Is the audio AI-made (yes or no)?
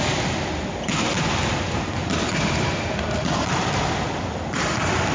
no